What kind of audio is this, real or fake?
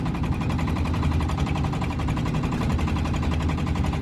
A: fake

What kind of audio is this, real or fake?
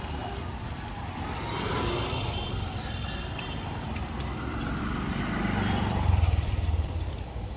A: fake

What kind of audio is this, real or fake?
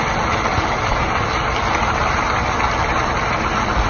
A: real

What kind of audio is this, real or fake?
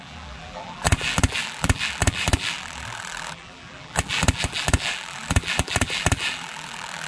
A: fake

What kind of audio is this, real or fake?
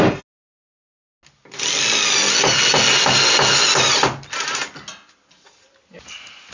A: real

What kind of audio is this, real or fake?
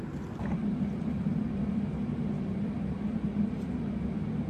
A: fake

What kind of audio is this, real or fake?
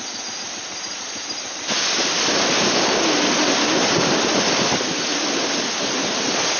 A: fake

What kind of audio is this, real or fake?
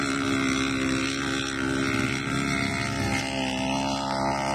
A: real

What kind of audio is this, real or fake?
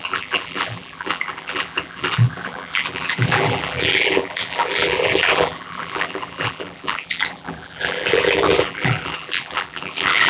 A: fake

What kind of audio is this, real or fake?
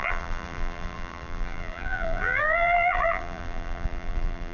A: fake